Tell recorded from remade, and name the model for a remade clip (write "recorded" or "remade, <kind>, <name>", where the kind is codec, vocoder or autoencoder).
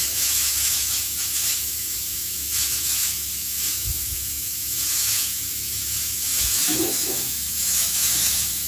remade, autoencoder, DAC-VAE